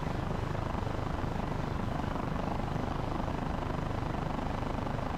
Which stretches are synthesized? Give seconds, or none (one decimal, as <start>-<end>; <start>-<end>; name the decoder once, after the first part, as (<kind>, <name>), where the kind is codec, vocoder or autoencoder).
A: 0.0-0.6 (codec, DAC); 1.2-3.3